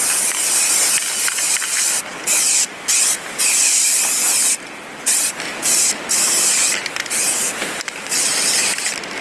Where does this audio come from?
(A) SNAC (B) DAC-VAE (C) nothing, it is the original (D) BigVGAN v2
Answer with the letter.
D